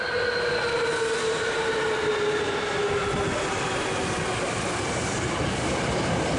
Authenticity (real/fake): real